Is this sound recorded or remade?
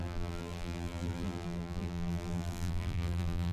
remade